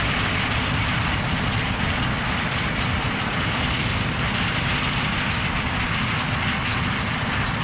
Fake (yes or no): no